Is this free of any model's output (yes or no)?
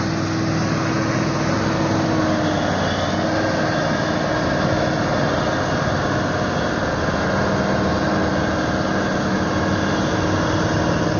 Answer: yes